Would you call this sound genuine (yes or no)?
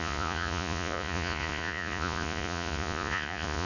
no